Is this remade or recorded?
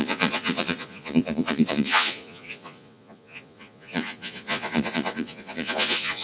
remade